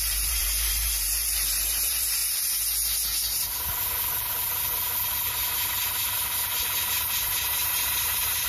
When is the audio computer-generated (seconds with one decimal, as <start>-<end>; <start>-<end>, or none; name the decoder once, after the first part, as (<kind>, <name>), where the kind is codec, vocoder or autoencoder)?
0.0-2.2 (vocoder, BigVGAN v2); 6.8-8.5